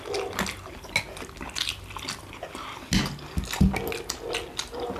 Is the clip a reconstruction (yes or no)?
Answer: no